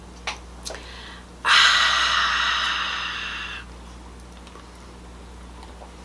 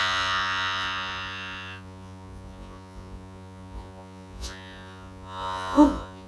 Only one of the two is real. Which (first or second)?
first